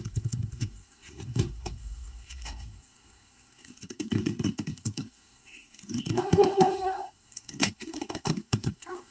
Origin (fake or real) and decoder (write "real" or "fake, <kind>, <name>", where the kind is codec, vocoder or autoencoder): fake, codec, SNAC